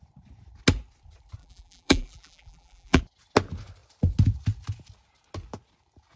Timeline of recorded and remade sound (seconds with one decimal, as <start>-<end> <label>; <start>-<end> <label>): 0.0-1.4 recorded; 1.4-3.0 remade; 3.0-6.2 recorded